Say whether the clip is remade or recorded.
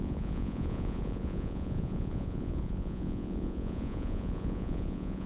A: remade